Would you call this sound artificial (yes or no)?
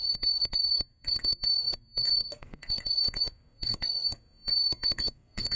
yes